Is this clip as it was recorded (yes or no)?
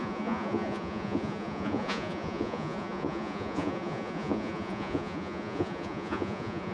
no